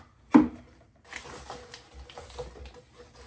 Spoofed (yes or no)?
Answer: no